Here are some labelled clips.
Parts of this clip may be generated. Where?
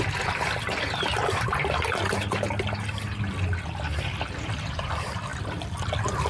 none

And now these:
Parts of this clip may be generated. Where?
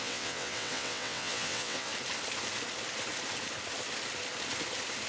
0.0-1.9 (vocoder, WaveNeXt)